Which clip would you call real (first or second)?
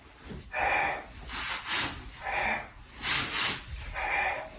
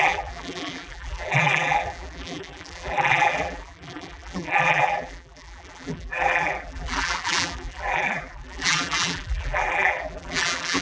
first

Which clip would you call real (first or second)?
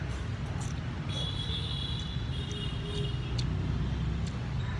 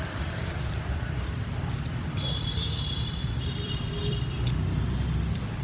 first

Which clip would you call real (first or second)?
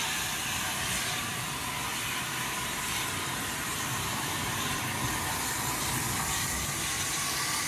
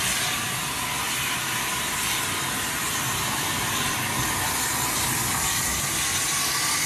second